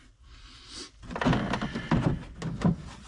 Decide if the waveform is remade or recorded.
recorded